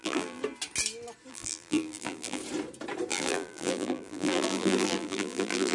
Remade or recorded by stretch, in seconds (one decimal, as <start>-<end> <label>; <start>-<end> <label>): 0.0-0.4 remade; 0.4-1.3 recorded; 1.3-2.4 remade; 2.4-3.1 recorded; 3.1-5.7 remade